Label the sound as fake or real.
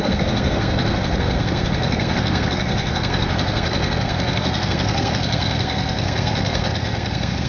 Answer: fake